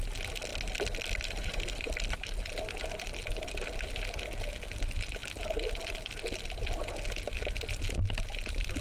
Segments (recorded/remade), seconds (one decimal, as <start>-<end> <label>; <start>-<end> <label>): 0.0-8.8 recorded